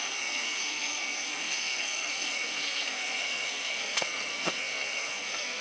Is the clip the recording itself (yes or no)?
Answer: no